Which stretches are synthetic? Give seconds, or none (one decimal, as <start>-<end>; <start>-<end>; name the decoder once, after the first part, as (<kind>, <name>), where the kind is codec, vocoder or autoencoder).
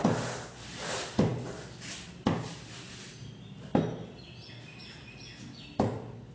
none